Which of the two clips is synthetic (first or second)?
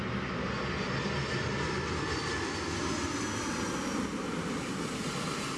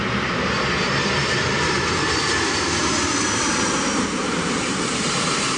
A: second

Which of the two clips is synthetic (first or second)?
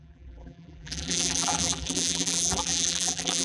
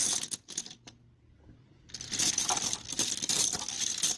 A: first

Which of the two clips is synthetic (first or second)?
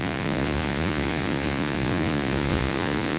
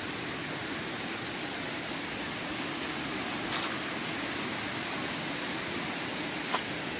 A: first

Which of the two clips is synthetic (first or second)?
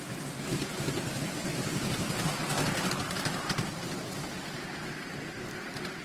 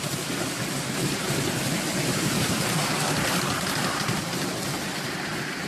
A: second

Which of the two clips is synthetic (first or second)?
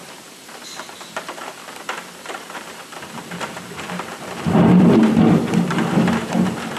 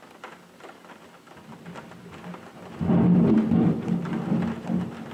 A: first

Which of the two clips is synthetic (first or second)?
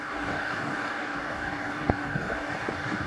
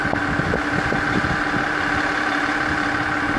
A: first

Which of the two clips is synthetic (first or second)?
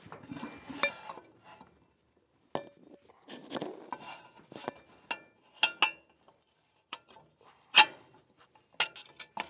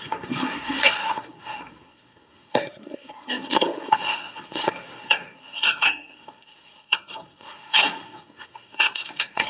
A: second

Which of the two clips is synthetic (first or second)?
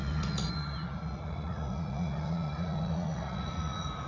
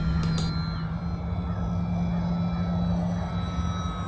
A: first